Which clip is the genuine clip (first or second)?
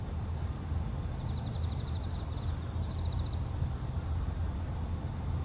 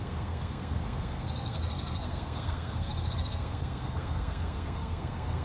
first